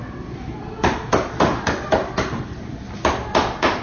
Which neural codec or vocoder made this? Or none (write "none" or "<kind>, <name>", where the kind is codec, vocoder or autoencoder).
none